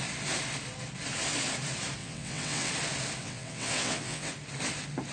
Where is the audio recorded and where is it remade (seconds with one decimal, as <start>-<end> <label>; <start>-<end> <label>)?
0.0-2.0 recorded; 2.0-2.7 remade; 2.7-3.2 recorded; 3.2-4.3 remade; 4.3-5.1 recorded